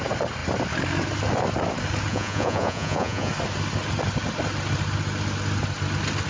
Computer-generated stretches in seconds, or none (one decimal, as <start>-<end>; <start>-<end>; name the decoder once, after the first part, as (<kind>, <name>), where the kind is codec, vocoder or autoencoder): 2.1-3.3 (vocoder, Vocos)